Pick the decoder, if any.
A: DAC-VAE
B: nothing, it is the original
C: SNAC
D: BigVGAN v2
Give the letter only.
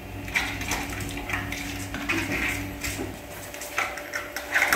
B